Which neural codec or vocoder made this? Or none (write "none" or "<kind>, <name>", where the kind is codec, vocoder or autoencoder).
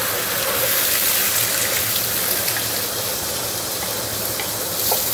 vocoder, BigVGAN v2